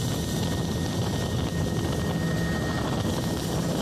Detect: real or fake real